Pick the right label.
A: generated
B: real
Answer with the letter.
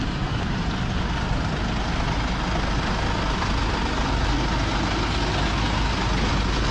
B